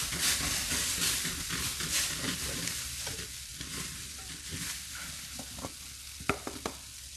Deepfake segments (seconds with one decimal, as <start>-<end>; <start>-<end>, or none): none